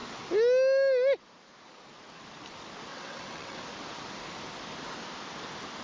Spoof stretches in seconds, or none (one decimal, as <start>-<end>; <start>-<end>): 2.9-3.6